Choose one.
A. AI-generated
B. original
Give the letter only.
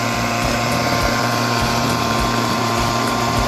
A